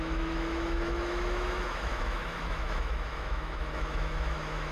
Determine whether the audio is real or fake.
fake